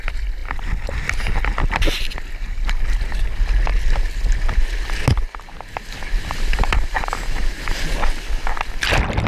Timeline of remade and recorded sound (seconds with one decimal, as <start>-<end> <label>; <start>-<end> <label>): 0.0-9.3 recorded